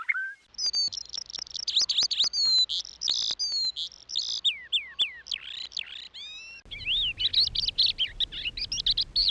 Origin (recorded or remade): recorded